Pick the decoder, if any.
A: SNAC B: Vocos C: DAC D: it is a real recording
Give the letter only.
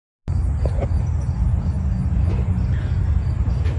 D